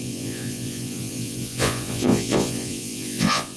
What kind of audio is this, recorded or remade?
remade